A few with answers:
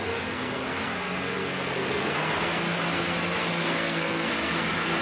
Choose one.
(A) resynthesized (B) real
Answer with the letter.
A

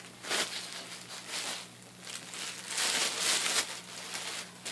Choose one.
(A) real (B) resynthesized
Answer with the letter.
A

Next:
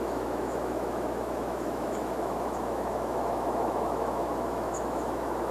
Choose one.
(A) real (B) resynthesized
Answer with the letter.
B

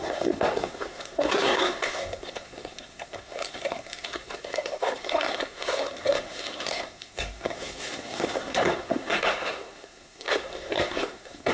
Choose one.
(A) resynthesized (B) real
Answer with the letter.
A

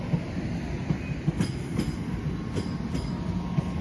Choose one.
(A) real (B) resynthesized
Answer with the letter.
A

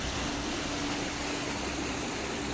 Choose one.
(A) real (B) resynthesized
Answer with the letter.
A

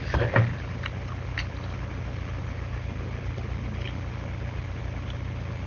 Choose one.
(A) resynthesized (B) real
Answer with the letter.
B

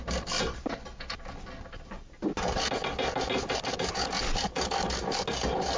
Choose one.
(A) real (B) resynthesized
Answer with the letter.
A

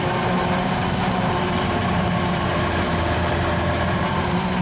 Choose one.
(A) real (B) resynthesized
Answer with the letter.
B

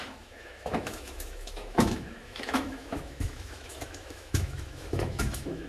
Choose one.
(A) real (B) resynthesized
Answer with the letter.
B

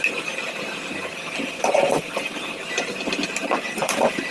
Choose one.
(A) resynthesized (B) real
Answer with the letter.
B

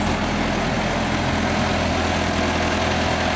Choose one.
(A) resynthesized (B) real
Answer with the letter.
B